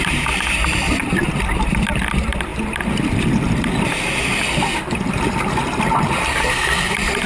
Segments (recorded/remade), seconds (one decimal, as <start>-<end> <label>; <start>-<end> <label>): 0.0-7.3 recorded